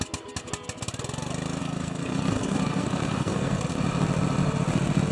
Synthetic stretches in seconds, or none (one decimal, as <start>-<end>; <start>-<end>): 1.6-3.6